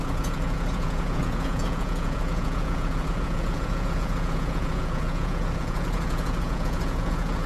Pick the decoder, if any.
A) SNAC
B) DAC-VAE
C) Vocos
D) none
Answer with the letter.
C